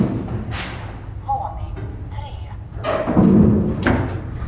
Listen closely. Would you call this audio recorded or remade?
recorded